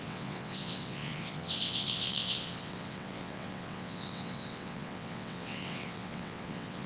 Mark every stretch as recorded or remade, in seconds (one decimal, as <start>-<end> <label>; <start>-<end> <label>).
0.0-6.9 remade